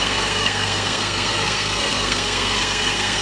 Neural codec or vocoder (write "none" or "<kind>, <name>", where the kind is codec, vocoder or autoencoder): codec, SNAC